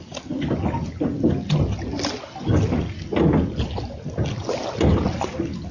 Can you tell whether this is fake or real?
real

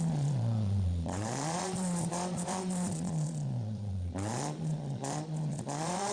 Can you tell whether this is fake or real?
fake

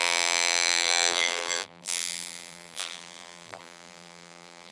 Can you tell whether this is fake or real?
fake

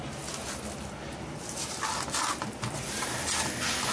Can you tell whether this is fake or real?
real